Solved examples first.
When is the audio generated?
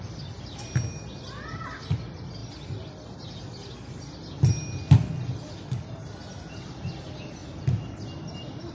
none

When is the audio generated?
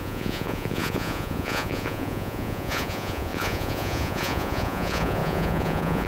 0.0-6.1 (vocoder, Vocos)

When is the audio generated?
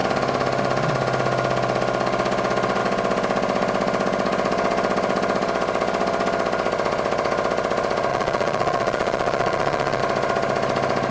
8.1-10.0 (vocoder, Vocos)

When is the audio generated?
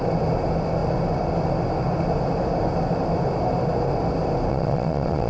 4.5-5.3 (vocoder, Vocos)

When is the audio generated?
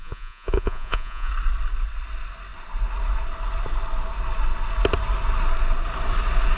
0.0-1.3 (vocoder, Vocos)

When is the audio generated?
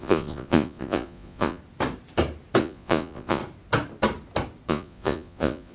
0.0-1.6 (vocoder, Vocos); 2.6-3.4; 4.7-5.7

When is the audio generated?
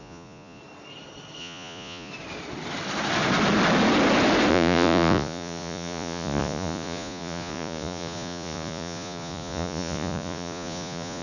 0.0-0.6 (vocoder, Vocos); 1.4-2.1; 4.5-11.2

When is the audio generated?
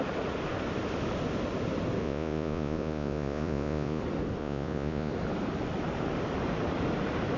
2.0-4.0 (vocoder, Vocos); 4.4-5.1